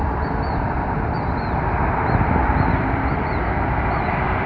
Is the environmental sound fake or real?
real